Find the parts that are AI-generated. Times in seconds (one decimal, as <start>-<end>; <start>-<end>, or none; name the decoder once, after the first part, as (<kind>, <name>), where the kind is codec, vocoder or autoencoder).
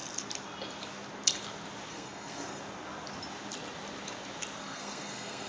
1.9-2.6 (codec, SNAC); 4.6-5.5